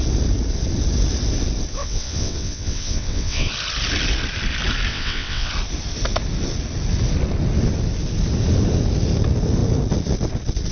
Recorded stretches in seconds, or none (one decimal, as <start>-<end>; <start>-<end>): 0.0-1.7; 3.5-4.9; 5.5-10.7